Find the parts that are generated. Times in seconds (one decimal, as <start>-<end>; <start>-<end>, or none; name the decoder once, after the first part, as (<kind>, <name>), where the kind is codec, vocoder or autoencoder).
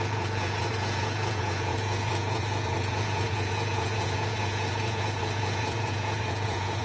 0.0-6.8 (vocoder, Vocos)